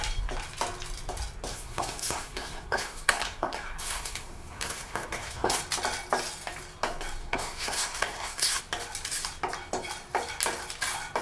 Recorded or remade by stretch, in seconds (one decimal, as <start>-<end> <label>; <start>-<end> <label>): 0.0-1.5 recorded; 1.5-5.6 remade; 5.6-7.2 recorded; 7.2-8.6 remade; 8.6-11.2 recorded